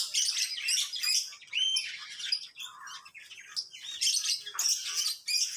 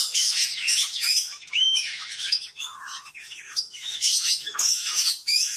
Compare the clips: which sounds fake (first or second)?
second